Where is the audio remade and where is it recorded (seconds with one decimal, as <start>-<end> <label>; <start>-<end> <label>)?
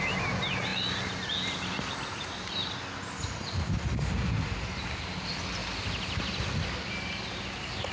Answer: 0.0-7.9 recorded